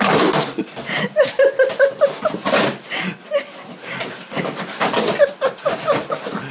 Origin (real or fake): real